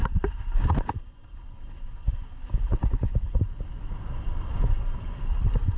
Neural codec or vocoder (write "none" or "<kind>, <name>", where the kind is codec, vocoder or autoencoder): none